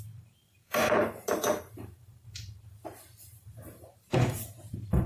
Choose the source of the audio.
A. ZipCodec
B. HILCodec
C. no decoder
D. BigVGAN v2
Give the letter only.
D